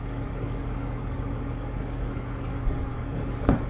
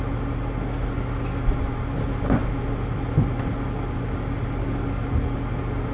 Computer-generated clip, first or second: first